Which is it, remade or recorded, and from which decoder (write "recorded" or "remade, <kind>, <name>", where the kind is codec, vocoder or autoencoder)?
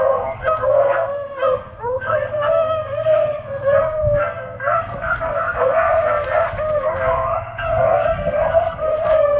remade, codec, SNAC